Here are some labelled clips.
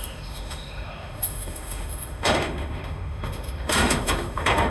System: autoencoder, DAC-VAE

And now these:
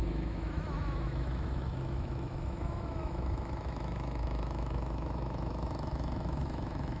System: autoencoder, DAC-VAE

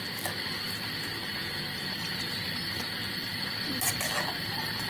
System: none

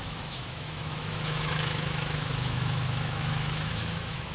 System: autoencoder, DAC-VAE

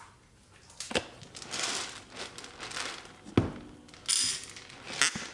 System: none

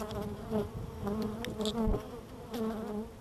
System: none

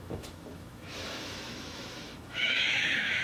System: autoencoder, DAC-VAE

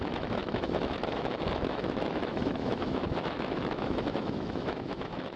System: autoencoder, DAC-VAE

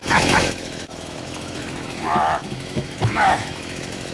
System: autoencoder, DAC-VAE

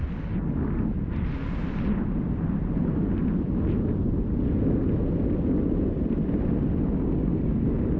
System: none